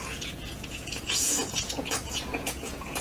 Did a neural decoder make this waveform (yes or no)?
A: yes